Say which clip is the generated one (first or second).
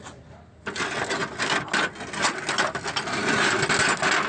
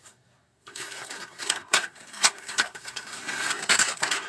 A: second